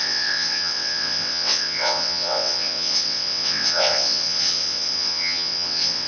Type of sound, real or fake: fake